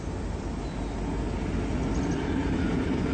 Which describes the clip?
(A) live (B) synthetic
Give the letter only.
A